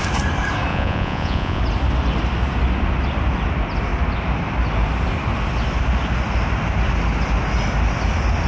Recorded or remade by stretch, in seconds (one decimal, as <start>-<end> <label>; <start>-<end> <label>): 0.0-0.7 recorded; 0.7-1.6 remade; 1.6-8.5 recorded